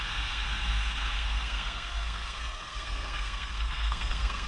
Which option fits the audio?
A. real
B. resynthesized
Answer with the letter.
B